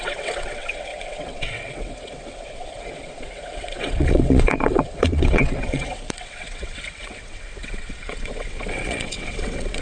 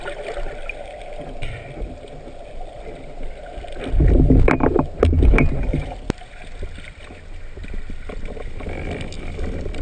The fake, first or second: first